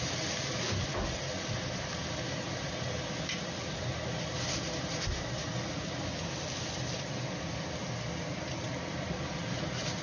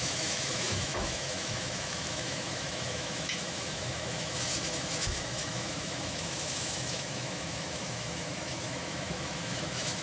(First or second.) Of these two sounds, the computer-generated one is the second